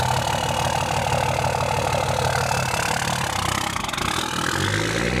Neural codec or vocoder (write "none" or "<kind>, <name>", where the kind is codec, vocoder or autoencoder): none